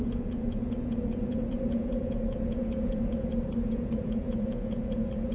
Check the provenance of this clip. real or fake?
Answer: fake